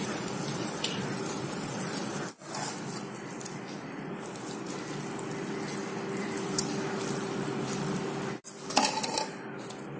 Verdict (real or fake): real